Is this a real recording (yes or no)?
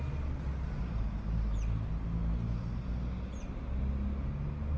yes